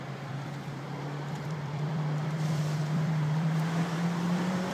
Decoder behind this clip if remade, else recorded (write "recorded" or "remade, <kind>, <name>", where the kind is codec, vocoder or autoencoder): remade, vocoder, BigVGAN v2